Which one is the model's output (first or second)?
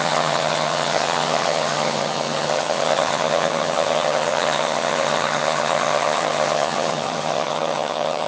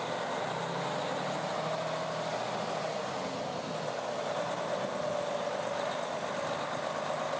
first